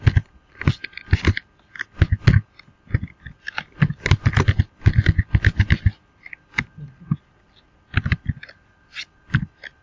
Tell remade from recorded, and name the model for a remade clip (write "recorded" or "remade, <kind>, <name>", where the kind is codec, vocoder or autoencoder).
recorded